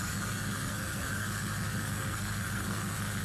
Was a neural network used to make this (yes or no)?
yes